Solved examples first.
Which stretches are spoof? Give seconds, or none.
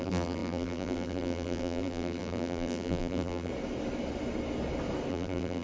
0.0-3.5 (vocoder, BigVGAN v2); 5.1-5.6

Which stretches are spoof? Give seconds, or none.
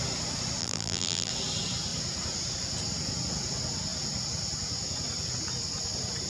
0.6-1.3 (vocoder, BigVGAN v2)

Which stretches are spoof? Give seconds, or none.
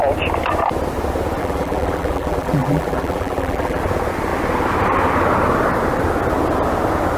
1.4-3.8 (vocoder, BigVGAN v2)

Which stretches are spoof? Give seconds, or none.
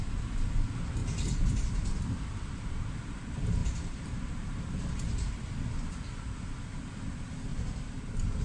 1.0-2.9 (vocoder, BigVGAN v2); 3.6-5.3